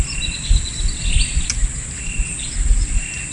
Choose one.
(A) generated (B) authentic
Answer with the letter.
B